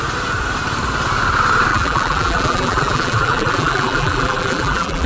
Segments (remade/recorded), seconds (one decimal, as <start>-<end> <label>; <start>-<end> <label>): 0.0-1.7 recorded; 1.7-5.1 remade